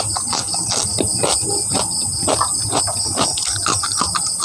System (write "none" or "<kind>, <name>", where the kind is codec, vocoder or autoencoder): none